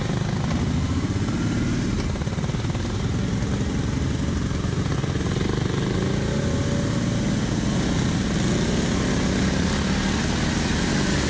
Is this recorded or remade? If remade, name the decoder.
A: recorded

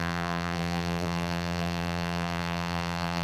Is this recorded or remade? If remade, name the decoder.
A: remade, vocoder, BigVGAN v2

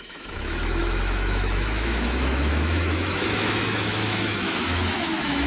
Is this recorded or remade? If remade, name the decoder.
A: remade, autoencoder, DAC-VAE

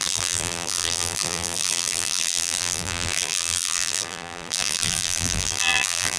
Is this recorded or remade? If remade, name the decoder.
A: remade, vocoder, BigVGAN v2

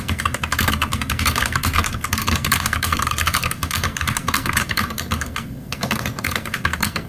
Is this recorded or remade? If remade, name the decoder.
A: remade, codec, SNAC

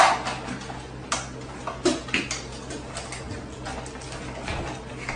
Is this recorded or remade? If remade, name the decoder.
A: recorded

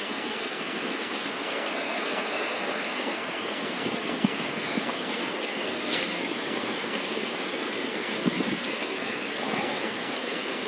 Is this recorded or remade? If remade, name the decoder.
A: remade, codec, SNAC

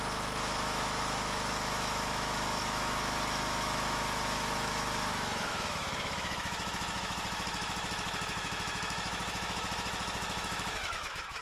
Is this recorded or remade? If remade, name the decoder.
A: remade, autoencoder, DAC-VAE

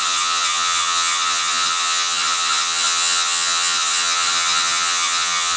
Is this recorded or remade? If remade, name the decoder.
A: remade, vocoder, HiFi-GAN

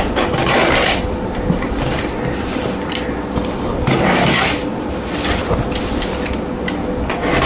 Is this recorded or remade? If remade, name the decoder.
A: recorded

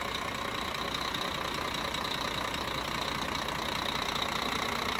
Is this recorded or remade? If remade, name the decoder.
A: recorded